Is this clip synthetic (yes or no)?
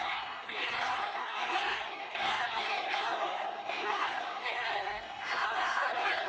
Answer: yes